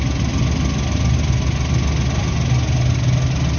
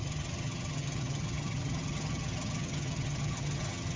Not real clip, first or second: second